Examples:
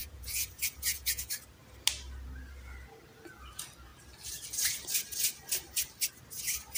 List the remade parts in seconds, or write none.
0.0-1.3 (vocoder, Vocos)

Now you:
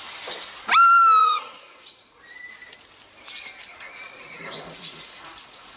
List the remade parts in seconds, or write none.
1.2-2.2 (vocoder, Vocos); 3.7-5.8

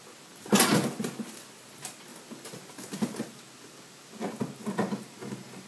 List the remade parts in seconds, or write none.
none

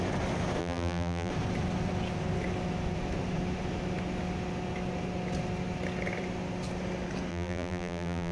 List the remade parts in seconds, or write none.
0.6-1.3 (vocoder, BigVGAN v2); 7.3-8.3

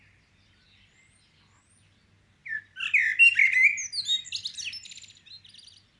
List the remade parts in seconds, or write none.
none

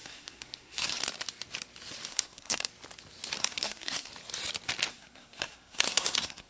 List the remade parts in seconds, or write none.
0.0-1.0 (codec, SNAC); 2.1-2.7; 3.4-4.1; 4.9-6.5

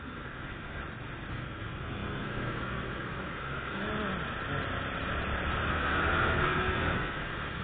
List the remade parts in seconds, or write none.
0.0-0.8 (codec, SNAC); 1.3-3.9; 5.7-7.6